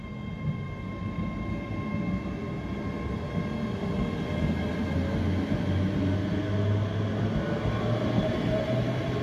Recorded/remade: recorded